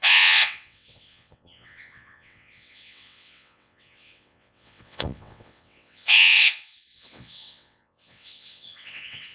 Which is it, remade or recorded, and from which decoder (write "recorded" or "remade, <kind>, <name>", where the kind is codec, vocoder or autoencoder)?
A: remade, vocoder, WaveNeXt